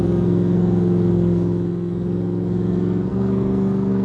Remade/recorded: remade